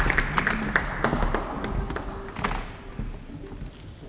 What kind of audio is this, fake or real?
real